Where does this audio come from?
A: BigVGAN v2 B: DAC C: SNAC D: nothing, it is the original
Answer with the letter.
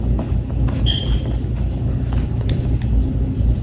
D